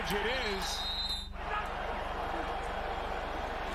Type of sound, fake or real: real